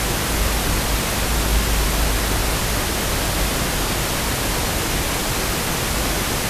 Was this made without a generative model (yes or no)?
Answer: yes